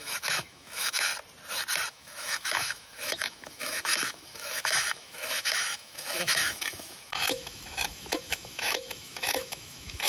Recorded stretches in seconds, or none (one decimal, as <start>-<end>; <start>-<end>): 1.1-1.9